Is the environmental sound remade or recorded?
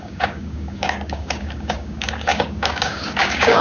remade